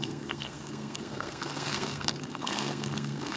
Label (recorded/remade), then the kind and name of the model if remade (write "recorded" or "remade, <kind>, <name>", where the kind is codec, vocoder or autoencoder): remade, codec, SNAC